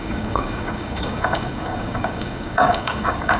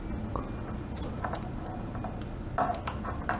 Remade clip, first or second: first